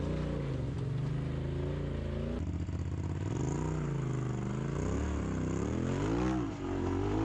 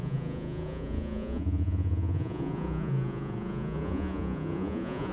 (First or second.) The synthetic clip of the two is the second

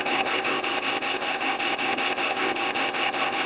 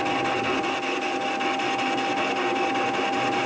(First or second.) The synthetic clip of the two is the first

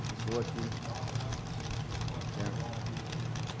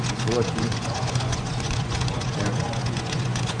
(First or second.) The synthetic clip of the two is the second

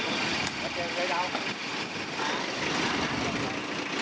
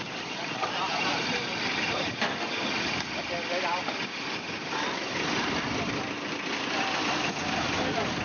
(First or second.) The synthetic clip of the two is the second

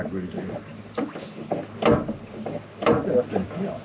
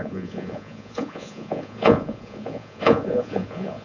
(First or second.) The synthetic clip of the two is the second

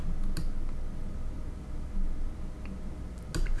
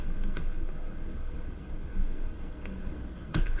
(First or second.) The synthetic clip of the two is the second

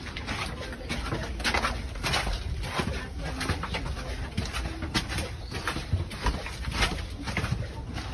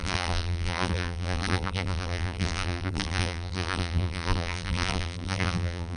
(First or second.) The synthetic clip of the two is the second